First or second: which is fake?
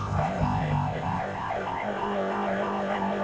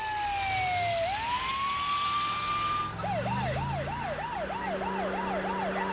first